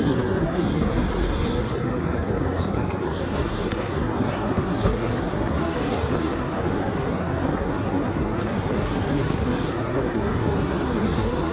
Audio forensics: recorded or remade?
remade